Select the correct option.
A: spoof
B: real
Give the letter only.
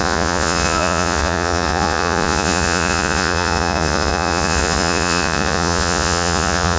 A